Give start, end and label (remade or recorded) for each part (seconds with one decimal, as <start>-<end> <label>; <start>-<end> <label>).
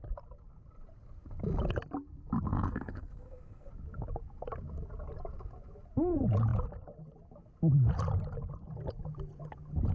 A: 0.0-2.5 recorded; 2.5-3.7 remade; 3.7-9.9 recorded